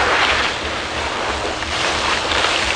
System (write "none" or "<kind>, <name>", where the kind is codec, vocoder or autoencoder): vocoder, BigVGAN v2